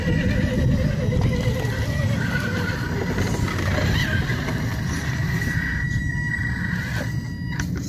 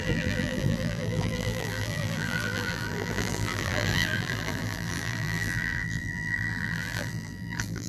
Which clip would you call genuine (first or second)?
first